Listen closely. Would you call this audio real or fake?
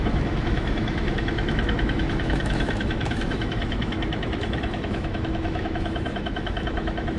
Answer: fake